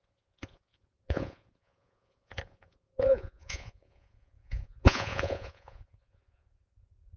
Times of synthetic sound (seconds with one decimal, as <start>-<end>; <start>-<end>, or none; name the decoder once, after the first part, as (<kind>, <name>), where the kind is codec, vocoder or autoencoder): 0.0-7.2 (vocoder, Vocos)